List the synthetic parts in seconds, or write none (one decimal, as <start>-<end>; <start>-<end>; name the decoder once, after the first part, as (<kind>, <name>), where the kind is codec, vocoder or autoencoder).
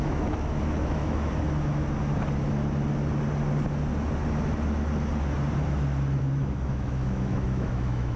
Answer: 0.0-1.3 (autoencoder, DAC-VAE); 6.2-8.2